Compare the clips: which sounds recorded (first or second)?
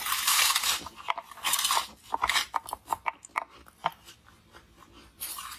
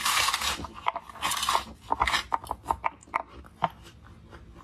second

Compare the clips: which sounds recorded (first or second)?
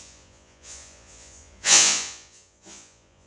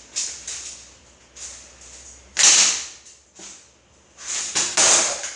second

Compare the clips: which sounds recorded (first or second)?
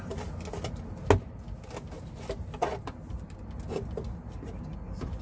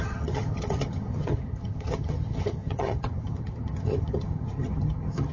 first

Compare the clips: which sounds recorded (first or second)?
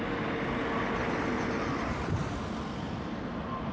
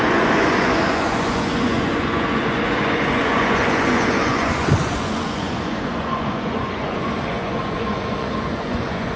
first